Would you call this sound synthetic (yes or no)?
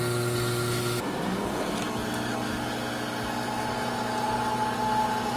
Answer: no